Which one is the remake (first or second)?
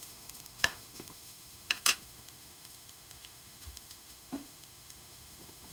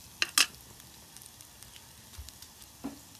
first